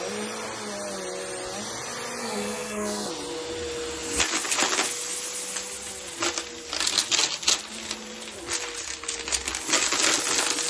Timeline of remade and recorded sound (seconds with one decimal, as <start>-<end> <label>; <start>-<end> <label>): 0.0-2.2 recorded; 2.2-3.1 remade; 3.1-10.7 recorded